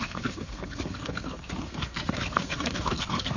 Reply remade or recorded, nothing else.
remade